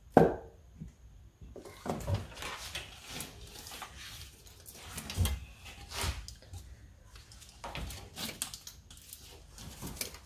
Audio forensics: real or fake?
real